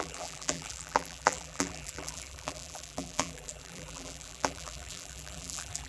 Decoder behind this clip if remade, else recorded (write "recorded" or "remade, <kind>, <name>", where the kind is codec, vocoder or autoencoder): remade, vocoder, BigVGAN v2